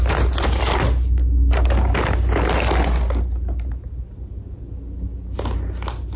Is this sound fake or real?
real